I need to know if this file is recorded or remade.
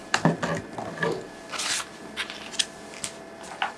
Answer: recorded